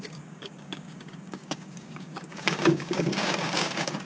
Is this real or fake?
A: fake